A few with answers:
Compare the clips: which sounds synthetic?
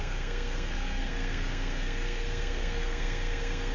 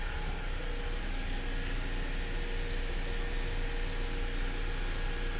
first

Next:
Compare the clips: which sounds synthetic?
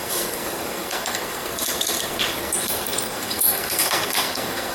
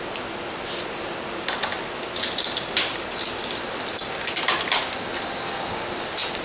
first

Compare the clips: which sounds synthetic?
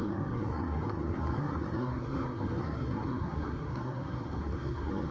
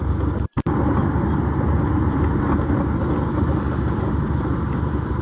first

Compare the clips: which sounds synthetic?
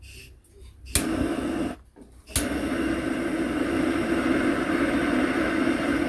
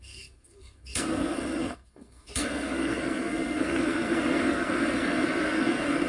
second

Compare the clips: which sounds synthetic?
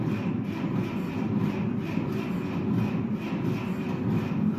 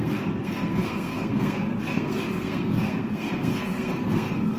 second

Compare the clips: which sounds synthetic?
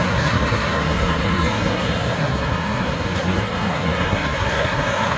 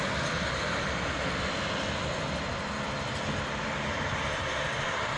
first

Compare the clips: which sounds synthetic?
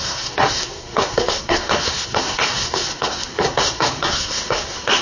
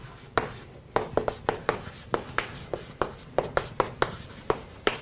first